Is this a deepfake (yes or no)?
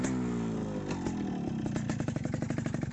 no